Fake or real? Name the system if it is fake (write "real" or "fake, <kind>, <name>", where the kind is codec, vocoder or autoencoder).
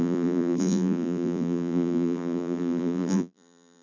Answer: fake, vocoder, BigVGAN v2